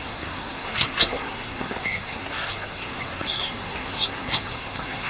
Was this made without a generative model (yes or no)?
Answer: no